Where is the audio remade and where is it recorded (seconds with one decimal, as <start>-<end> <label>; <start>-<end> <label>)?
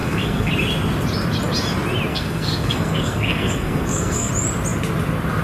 0.0-0.5 remade; 0.5-2.1 recorded; 2.1-4.3 remade; 4.3-5.4 recorded